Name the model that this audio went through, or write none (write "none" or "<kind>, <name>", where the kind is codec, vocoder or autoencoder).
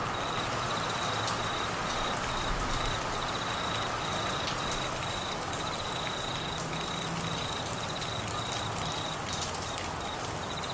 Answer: none